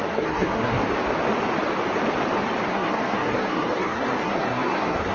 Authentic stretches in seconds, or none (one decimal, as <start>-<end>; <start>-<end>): 0.8-2.7